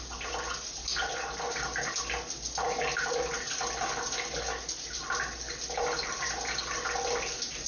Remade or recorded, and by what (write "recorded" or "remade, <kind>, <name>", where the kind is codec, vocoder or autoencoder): recorded